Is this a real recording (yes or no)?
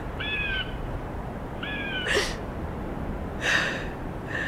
yes